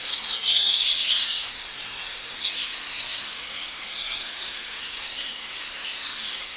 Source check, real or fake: fake